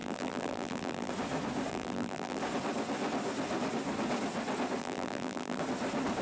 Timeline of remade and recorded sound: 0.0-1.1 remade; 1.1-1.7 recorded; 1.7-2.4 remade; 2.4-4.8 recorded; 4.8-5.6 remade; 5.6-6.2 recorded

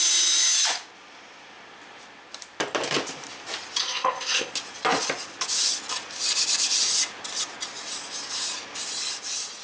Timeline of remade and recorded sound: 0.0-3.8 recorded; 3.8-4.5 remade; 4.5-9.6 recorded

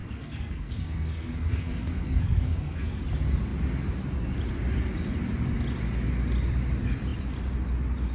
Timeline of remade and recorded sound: 0.0-3.0 remade; 3.0-8.1 recorded

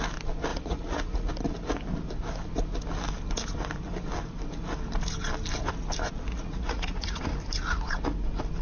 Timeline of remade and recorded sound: 0.0-0.5 recorded; 0.5-1.3 remade; 1.3-6.3 recorded; 6.3-7.2 remade; 7.2-8.6 recorded

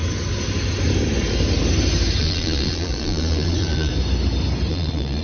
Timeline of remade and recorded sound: 0.0-2.2 recorded; 2.2-3.9 remade; 3.9-4.7 recorded; 4.7-5.2 remade